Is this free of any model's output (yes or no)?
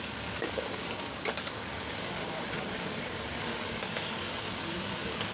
no